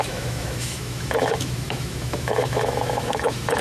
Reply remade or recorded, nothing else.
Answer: remade